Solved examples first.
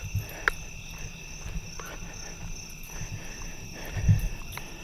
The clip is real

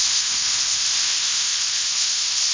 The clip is fake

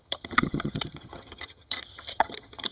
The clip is fake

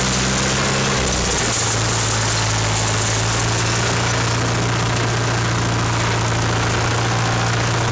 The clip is real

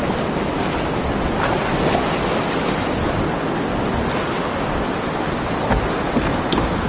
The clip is real